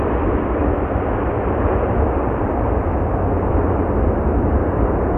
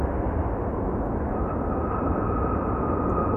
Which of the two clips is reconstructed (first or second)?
first